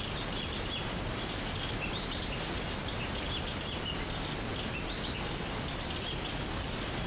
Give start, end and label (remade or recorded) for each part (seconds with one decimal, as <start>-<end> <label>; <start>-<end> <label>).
0.0-0.8 recorded; 0.8-3.4 remade; 3.4-7.1 recorded